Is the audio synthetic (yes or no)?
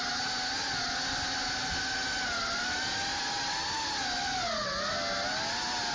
no